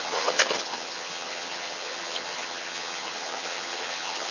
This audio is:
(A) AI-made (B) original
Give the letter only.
A